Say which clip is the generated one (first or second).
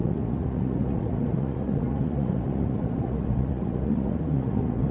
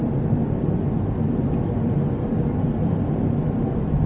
first